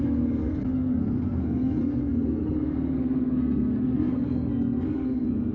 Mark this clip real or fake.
fake